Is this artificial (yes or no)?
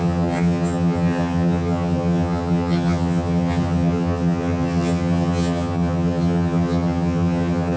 yes